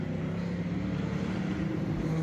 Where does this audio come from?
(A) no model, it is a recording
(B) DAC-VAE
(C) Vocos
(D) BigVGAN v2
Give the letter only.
D